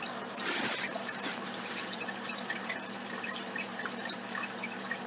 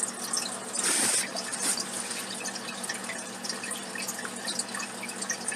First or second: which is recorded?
second